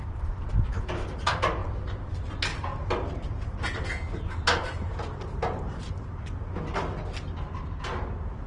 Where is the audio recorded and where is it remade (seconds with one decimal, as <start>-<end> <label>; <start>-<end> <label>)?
0.0-2.5 recorded; 2.5-3.4 remade; 3.4-4.9 recorded; 4.9-5.9 remade; 5.9-8.5 recorded